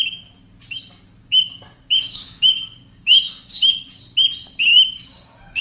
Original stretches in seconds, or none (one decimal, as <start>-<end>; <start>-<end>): 0.0-1.2; 4.0-4.7